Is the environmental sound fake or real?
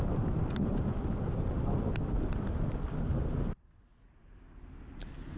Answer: real